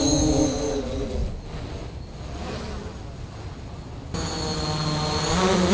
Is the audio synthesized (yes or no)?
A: no